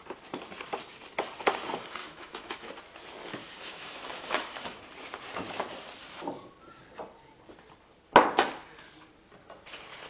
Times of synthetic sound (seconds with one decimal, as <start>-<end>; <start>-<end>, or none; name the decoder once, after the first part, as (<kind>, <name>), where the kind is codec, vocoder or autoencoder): 2.0-2.7 (autoencoder, DAC-VAE); 3.4-4.8